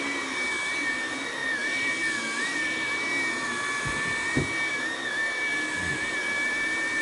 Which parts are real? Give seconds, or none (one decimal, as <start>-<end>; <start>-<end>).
0.0-7.0